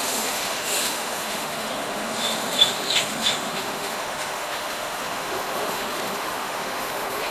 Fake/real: fake